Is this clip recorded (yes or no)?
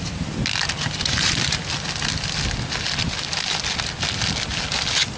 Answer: yes